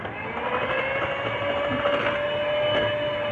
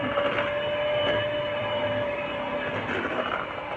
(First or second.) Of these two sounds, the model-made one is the second